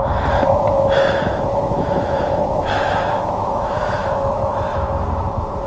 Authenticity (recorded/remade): remade